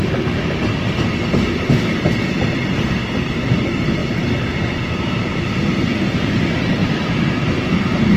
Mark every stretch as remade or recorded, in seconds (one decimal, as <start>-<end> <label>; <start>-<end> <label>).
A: 0.0-4.0 recorded; 4.0-5.7 remade; 5.7-8.2 recorded